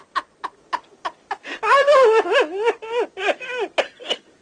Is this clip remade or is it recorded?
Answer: recorded